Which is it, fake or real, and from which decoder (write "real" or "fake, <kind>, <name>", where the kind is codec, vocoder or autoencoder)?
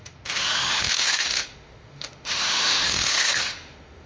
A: fake, autoencoder, DAC-VAE